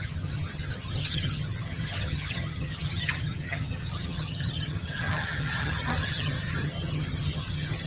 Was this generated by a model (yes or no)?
yes